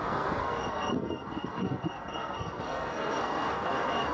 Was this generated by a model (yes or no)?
yes